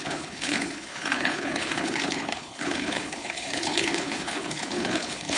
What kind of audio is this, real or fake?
fake